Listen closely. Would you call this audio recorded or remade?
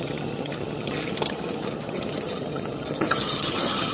remade